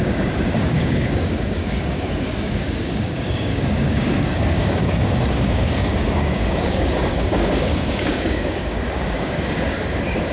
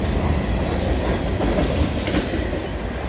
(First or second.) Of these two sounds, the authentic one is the second